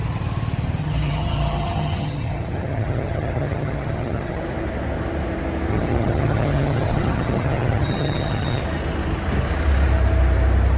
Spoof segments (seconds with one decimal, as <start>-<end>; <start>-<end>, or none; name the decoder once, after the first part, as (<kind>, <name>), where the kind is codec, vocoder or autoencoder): 0.8-4.4 (vocoder, HiFi-GAN); 5.7-8.6